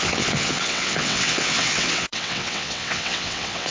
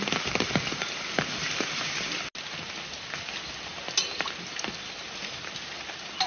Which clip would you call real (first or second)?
second